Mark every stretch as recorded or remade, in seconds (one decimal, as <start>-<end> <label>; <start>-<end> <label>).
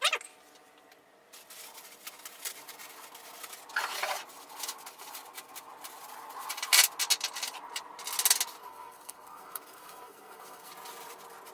0.0-8.6 recorded; 8.6-10.7 remade; 10.7-11.5 recorded